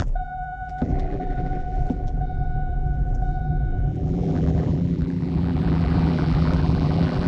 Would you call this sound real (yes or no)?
no